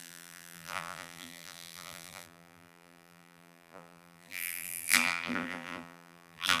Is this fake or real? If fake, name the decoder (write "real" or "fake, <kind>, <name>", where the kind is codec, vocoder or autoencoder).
fake, vocoder, BigVGAN v2